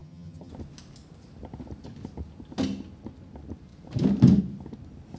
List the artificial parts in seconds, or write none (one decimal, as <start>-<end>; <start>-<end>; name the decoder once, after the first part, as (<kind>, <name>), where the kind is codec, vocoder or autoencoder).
0.0-0.5 (vocoder, HiFi-GAN)